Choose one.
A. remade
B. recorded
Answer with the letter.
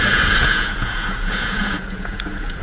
A